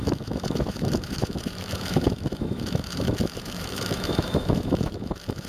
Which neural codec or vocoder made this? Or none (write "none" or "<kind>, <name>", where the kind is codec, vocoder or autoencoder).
autoencoder, DAC-VAE